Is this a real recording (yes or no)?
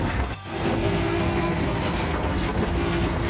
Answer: no